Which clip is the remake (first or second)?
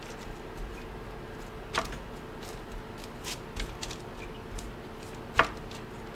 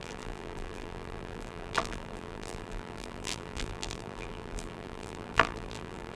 second